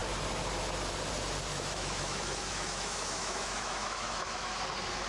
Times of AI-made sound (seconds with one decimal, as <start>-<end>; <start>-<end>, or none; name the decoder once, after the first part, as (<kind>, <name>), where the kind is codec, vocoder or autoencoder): 1.5-4.6 (autoencoder, DAC-VAE)